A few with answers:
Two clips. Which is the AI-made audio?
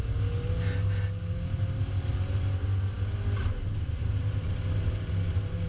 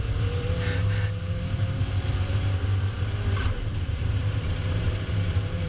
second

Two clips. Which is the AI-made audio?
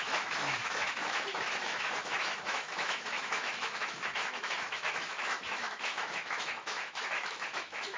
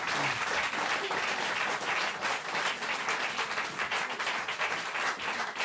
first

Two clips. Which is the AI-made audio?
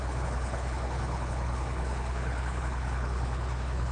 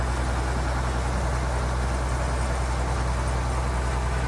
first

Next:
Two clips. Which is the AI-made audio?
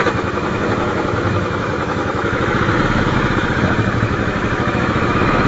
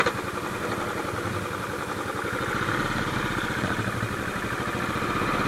first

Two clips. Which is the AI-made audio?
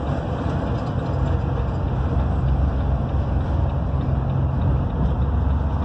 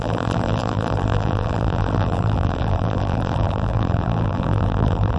second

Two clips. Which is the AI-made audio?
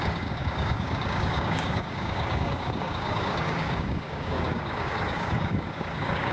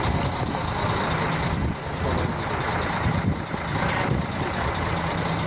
first